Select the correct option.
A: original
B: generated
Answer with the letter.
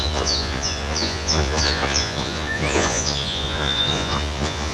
B